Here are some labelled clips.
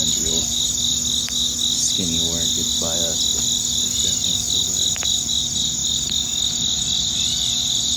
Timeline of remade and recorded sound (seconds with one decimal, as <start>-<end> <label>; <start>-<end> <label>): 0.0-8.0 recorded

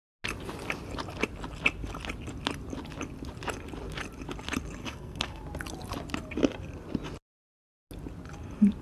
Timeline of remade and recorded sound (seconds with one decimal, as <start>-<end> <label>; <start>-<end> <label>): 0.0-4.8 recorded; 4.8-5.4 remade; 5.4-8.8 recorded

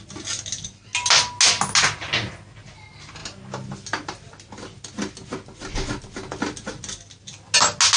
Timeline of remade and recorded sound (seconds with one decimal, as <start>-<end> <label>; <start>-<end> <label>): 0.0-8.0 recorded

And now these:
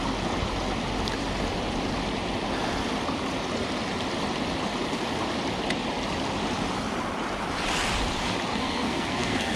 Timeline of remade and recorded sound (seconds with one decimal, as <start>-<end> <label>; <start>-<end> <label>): 0.0-8.5 recorded; 8.5-9.6 remade